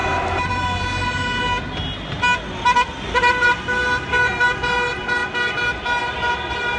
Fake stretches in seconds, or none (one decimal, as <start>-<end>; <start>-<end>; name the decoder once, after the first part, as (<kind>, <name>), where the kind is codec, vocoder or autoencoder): none